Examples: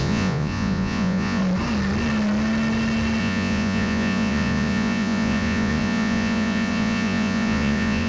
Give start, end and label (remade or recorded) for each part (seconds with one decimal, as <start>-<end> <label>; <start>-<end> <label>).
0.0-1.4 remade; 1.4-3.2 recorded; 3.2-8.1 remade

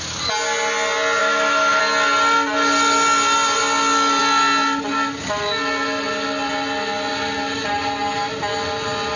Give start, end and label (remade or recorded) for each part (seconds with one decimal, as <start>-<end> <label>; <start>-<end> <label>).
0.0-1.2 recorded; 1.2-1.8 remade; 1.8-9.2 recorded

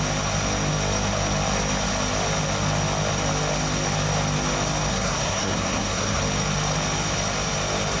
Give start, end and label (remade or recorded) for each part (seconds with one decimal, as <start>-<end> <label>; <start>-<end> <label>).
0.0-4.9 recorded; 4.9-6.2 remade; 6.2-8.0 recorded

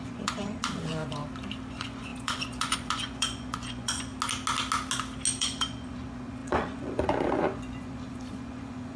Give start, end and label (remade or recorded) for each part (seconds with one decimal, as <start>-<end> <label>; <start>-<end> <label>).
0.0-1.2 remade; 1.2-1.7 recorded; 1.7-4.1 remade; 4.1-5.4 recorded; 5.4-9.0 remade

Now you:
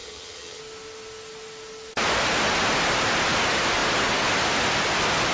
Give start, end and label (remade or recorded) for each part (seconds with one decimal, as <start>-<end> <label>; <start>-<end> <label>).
0.0-0.6 remade; 0.6-5.3 recorded